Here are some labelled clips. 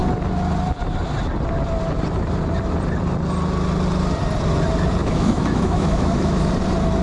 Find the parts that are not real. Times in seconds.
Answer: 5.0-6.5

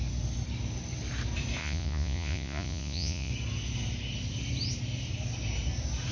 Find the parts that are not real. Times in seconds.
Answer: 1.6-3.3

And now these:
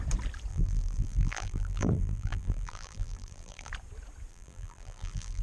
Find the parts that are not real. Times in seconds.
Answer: 0.5-3.7; 4.3-5.4

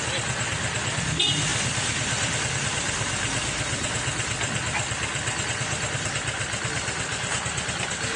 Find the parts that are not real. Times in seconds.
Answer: none

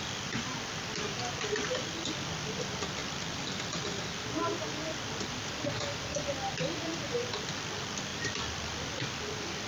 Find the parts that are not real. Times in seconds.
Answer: none